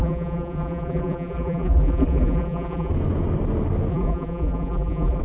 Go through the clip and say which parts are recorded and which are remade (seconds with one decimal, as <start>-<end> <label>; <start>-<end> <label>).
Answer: 0.0-2.9 remade; 2.9-3.9 recorded; 3.9-5.2 remade